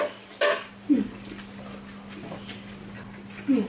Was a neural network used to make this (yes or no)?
no